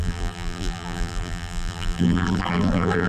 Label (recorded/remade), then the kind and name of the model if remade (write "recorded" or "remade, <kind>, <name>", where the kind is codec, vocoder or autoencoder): remade, vocoder, BigVGAN v2